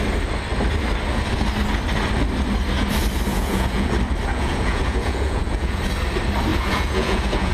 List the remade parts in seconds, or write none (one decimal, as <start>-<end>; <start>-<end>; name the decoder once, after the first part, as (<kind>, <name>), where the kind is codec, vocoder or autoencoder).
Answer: 3.3-3.9 (vocoder, Vocos); 4.3-5.8; 6.5-7.5